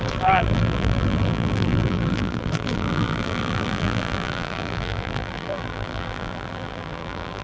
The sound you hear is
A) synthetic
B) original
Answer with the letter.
A